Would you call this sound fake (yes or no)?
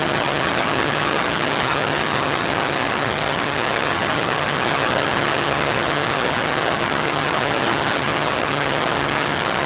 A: yes